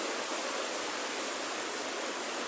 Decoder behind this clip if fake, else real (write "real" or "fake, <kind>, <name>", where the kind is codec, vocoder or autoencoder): real